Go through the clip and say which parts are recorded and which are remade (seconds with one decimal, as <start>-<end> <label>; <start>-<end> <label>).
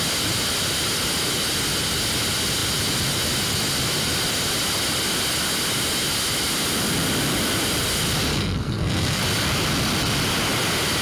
0.0-8.3 recorded; 8.3-9.2 remade; 9.2-11.0 recorded